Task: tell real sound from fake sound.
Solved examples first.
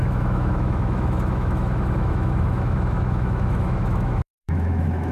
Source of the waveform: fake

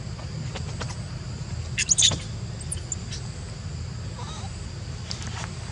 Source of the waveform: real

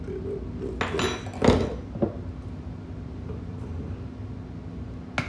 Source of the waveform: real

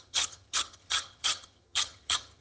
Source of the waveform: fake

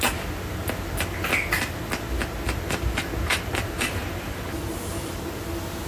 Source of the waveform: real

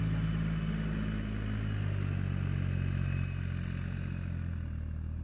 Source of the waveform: real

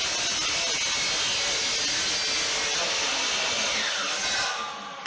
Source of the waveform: real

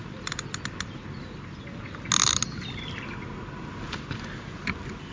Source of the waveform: real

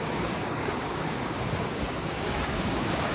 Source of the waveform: fake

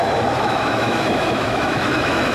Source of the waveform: fake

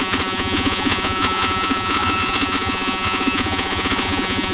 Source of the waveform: fake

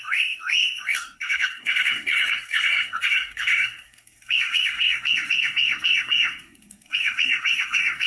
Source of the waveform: fake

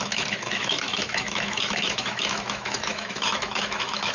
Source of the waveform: fake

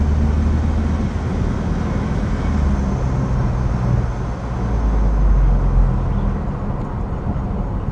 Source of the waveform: real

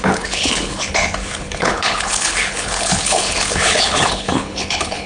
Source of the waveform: fake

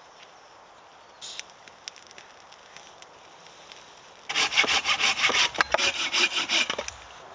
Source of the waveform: real